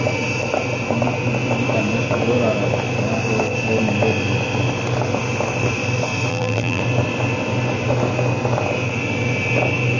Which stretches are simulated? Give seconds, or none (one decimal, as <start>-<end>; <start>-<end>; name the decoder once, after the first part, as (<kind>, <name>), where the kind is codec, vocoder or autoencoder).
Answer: 6.3-6.8 (vocoder, BigVGAN v2)